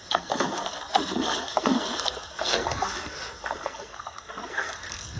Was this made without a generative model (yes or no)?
no